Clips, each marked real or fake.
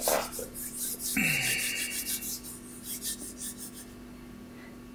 real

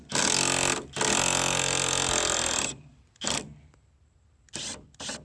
real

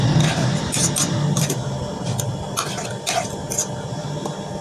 real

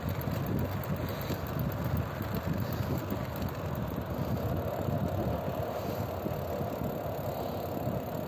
real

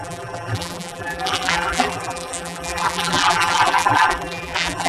fake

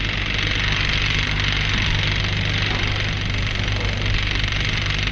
real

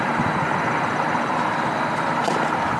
fake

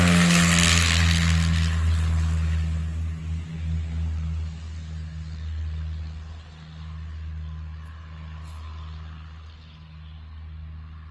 real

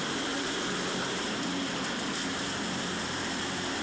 fake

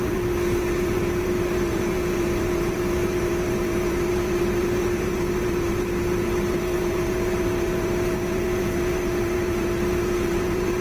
fake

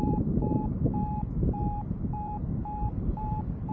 fake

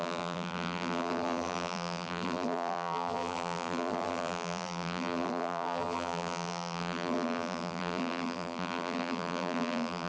fake